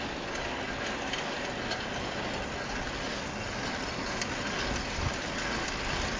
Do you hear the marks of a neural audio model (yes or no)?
no